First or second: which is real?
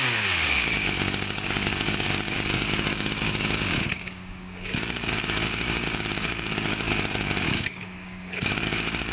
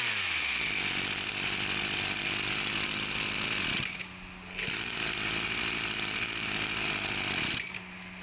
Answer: second